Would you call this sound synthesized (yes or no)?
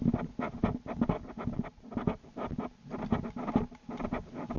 no